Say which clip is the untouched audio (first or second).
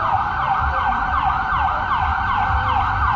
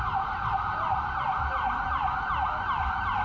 second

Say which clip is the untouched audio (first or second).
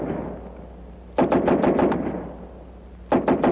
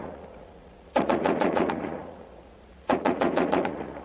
first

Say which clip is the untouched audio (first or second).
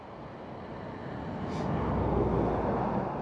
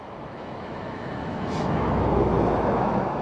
first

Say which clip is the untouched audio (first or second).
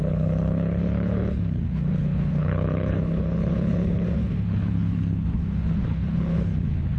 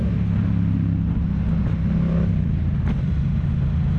second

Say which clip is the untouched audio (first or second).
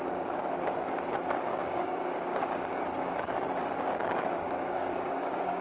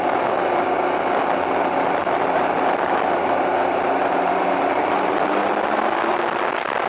second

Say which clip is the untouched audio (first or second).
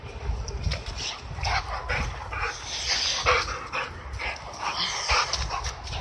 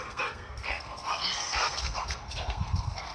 first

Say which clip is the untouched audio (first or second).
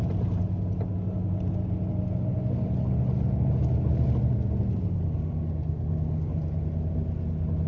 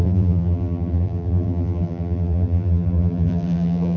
first